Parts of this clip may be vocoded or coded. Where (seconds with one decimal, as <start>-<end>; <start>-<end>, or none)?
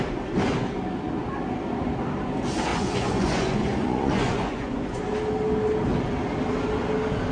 2.7-5.0